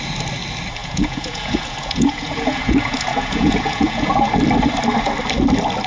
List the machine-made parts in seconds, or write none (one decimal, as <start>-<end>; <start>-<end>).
0.8-4.3